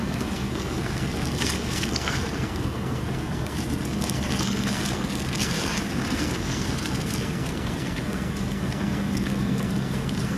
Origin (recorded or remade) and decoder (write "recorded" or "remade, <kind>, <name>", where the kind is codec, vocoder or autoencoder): remade, codec, SNAC